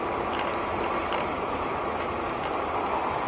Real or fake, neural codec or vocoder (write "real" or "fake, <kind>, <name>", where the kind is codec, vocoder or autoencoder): real